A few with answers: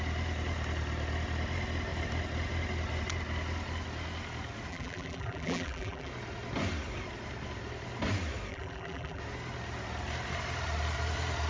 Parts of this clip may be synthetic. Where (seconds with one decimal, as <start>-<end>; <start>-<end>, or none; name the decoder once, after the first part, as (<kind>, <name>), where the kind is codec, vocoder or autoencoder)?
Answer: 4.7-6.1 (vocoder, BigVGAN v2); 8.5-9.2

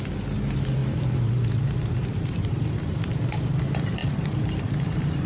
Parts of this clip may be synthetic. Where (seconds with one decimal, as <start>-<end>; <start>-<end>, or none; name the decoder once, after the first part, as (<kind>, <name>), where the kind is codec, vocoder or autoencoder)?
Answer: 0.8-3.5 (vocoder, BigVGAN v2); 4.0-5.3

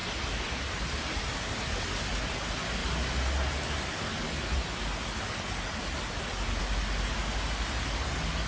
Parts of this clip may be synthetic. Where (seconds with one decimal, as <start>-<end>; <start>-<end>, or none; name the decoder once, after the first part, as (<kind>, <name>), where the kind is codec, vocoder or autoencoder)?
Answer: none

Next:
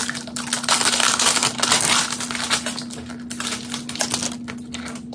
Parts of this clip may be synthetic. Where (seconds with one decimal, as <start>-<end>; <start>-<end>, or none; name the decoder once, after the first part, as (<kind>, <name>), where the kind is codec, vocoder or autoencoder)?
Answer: none

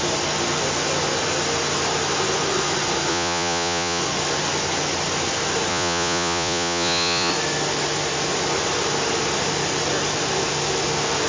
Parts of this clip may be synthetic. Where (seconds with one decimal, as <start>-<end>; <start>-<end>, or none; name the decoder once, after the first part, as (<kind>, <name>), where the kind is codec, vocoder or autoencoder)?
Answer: 3.1-4.0 (vocoder, Vocos); 5.7-7.3